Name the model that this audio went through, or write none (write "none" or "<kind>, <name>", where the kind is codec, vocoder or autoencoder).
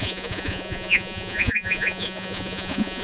vocoder, Vocos